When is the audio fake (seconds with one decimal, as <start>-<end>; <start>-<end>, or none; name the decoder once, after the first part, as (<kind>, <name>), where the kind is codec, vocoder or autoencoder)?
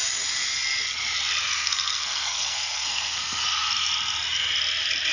1.6-3.4 (codec, SNAC)